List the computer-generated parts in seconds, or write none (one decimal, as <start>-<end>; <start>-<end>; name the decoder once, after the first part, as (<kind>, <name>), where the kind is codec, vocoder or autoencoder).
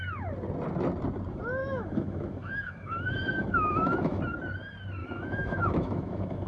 1.6-4.2 (autoencoder, DAC-VAE); 5.0-6.5